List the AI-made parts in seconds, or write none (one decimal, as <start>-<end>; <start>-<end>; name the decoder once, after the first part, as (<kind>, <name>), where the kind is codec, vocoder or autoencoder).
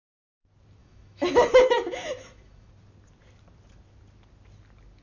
0.8-2.7 (autoencoder, DAC-VAE)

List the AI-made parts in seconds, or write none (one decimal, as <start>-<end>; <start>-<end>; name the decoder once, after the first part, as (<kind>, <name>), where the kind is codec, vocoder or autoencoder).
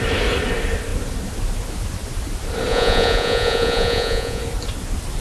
2.7-4.4 (vocoder, Vocos)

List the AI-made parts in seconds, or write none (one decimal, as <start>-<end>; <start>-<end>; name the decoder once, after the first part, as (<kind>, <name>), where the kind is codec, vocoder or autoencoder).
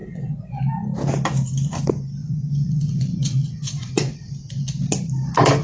0.0-0.6 (vocoder, WaveNeXt); 2.2-4.3